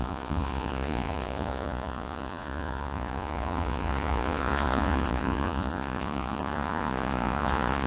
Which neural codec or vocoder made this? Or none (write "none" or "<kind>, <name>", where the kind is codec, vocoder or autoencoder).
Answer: vocoder, Vocos